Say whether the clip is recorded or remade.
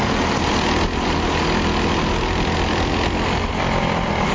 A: recorded